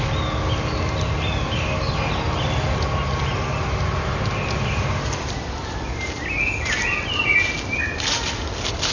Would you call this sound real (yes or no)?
yes